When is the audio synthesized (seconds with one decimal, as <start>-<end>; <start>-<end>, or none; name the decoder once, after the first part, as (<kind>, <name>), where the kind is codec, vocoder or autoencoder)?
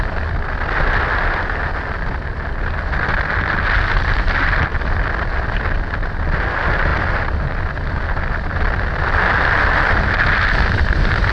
none